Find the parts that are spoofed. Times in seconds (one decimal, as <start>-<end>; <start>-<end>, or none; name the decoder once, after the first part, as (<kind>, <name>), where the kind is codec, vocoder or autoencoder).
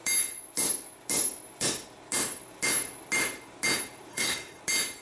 4.1-4.6 (codec, SNAC)